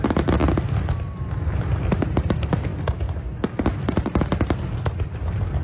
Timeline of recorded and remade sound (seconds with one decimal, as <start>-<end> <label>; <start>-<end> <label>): 0.0-5.6 recorded